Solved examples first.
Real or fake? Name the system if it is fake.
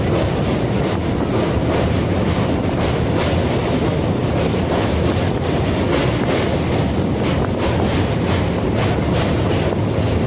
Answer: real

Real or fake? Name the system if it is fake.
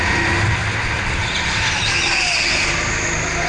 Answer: real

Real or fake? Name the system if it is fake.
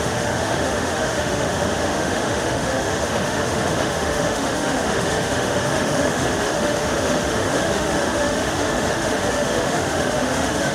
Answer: fake, autoencoder, DAC-VAE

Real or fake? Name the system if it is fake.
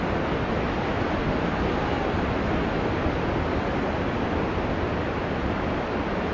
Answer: real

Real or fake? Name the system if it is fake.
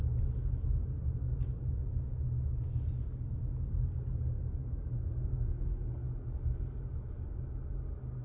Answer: real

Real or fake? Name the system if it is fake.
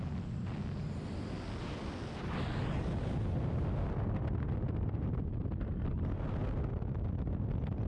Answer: real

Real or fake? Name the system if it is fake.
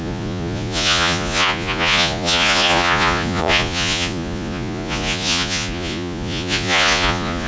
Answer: fake, vocoder, Vocos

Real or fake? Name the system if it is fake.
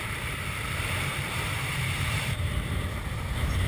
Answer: fake, vocoder, BigVGAN v2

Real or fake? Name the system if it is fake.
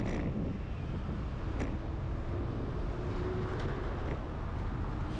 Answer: real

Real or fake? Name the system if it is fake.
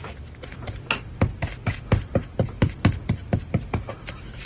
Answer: fake, vocoder, BigVGAN v2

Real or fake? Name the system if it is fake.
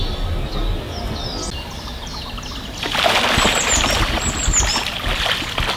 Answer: real